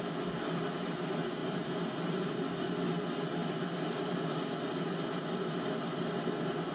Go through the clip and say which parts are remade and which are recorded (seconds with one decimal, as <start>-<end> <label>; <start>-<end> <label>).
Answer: 0.0-1.4 recorded; 1.4-2.4 remade; 2.4-6.7 recorded